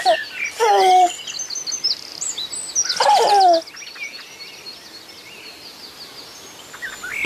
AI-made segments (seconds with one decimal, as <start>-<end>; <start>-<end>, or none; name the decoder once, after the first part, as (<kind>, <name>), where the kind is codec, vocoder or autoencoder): none